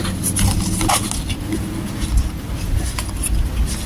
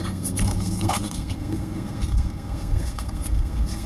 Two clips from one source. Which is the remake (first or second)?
second